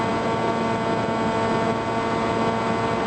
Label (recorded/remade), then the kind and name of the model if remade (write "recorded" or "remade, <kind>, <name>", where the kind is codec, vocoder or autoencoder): recorded